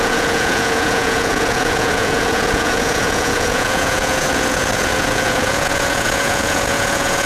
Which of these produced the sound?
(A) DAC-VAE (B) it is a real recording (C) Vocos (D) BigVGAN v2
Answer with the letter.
C